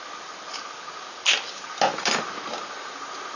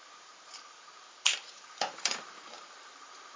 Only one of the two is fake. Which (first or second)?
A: second